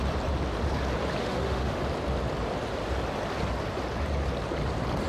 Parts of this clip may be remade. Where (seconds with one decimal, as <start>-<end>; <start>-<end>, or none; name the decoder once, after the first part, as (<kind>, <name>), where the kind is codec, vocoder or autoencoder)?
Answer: 1.2-1.8 (autoencoder, DAC-VAE)